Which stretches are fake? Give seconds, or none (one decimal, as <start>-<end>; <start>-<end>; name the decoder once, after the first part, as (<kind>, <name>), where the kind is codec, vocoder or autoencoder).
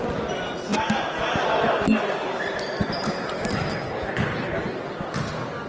none